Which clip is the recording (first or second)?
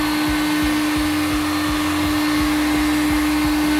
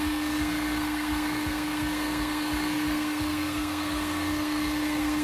first